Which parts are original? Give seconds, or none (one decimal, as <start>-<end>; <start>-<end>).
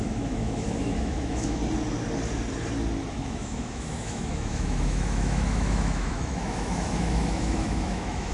1.6-3.1